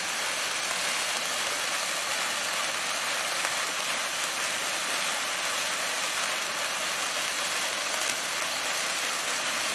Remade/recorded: recorded